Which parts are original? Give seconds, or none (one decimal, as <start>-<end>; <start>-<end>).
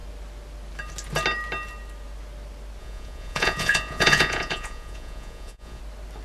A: 0.0-2.8; 5.8-6.2